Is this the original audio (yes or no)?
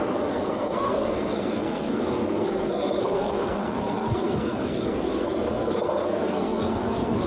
no